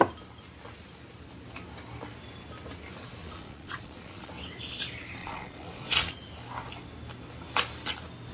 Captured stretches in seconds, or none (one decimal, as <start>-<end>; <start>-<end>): 0.0-3.2; 4.3-5.2; 6.1-8.3